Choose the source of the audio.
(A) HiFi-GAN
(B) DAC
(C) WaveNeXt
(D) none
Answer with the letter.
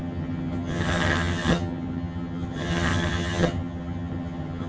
A